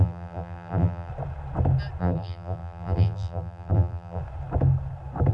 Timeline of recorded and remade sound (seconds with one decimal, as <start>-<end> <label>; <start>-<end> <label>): 0.0-1.1 remade; 1.1-2.0 recorded; 2.0-4.2 remade; 4.2-5.3 recorded